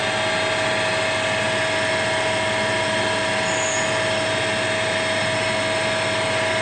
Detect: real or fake real